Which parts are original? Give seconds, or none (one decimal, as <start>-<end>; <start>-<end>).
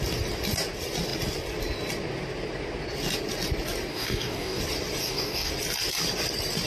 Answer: 0.0-3.9; 4.6-5.0; 5.5-6.7